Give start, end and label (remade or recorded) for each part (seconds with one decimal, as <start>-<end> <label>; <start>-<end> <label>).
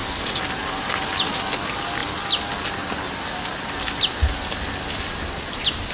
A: 0.0-5.9 recorded